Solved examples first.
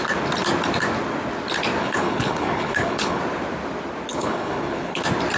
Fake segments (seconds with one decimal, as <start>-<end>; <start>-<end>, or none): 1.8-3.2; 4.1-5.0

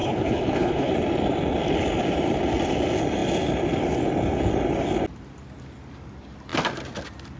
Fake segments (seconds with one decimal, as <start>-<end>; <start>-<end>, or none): 0.0-0.9

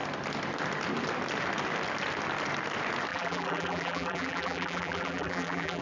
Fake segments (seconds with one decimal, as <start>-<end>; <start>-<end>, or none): 3.1-5.8